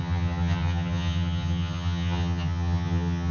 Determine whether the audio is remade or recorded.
remade